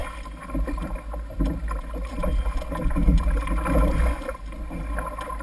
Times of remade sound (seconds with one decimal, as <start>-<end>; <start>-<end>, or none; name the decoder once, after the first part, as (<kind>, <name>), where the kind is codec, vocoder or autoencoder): none